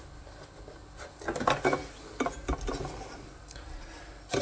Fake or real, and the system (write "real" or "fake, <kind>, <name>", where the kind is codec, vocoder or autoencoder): real